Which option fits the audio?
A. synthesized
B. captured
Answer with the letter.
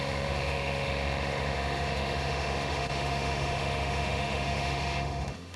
A